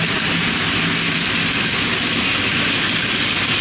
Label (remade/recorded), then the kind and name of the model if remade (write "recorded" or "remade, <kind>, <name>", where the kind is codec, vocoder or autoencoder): recorded